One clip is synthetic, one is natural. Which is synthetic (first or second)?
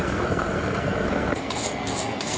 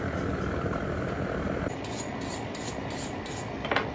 first